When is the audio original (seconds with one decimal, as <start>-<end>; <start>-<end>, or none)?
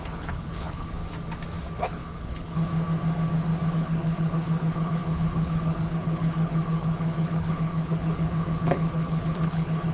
1.0-1.8; 2.7-3.7